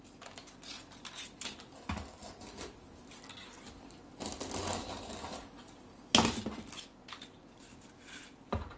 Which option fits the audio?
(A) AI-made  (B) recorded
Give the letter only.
B